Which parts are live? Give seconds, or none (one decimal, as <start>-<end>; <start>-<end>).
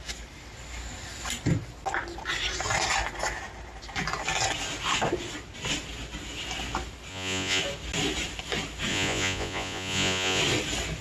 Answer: 0.0-7.1; 7.6-8.9; 10.4-11.0